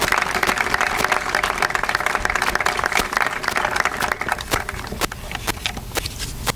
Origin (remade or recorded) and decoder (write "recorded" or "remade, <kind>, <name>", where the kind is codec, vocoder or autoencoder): recorded